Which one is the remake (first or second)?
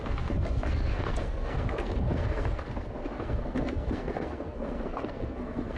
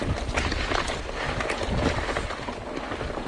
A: first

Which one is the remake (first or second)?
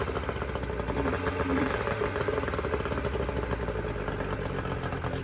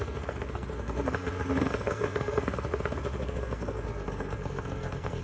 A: second